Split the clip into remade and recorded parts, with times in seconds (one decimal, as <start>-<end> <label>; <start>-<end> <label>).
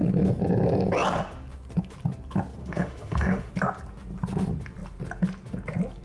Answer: 0.0-2.6 recorded; 2.6-3.5 remade; 3.5-6.0 recorded